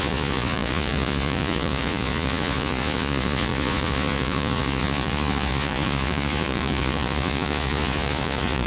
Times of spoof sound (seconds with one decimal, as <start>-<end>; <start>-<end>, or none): 0.0-8.7